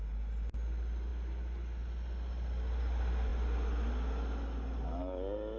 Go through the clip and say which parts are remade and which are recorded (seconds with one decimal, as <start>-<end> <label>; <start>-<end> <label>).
0.0-5.6 recorded